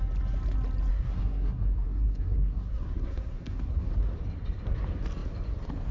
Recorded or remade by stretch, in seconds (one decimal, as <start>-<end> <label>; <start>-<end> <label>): 0.0-0.9 recorded; 0.9-3.9 remade; 3.9-5.9 recorded